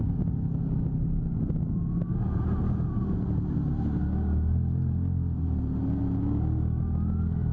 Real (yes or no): yes